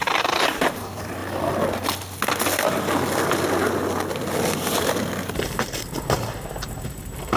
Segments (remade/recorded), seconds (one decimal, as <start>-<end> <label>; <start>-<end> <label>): 0.0-1.2 remade; 1.2-5.6 recorded; 5.6-7.4 remade